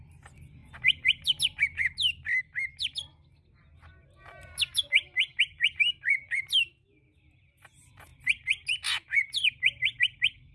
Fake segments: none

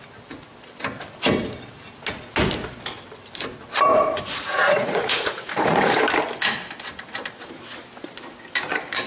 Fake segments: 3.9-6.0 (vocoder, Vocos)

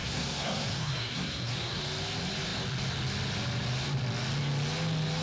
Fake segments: 0.0-1.8 (codec, SNAC)

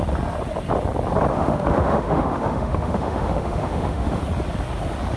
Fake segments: 1.3-4.2 (autoencoder, DAC-VAE)

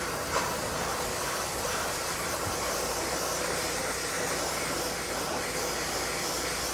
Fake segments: 0.9-4.9 (vocoder, BigVGAN v2)

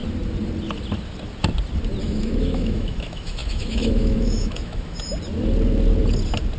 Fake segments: 2.0-5.1 (autoencoder, DAC-VAE)